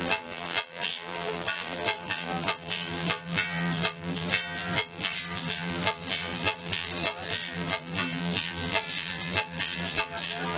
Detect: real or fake fake